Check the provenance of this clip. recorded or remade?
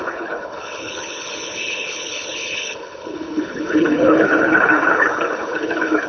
remade